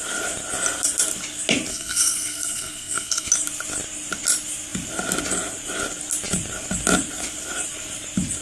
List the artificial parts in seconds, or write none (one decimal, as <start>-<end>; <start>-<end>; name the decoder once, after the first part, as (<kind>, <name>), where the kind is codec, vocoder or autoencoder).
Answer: 1.7-3.3 (codec, SNAC)